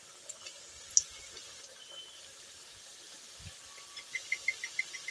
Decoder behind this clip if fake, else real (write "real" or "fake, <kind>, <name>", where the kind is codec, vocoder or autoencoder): real